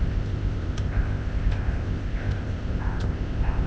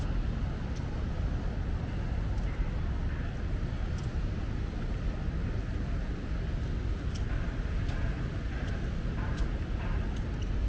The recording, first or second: second